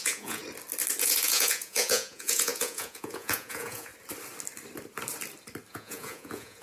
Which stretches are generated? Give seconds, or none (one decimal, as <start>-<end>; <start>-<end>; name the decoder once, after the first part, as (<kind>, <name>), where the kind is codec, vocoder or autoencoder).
0.0-0.4 (vocoder, Vocos); 1.0-3.9; 5.7-6.6